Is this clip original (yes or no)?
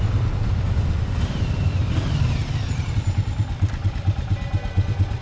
yes